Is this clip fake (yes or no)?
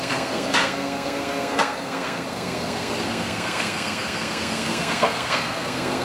yes